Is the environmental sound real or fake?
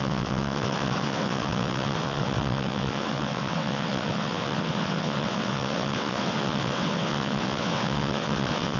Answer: fake